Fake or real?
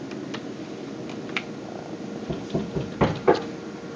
real